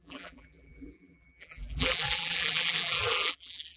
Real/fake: fake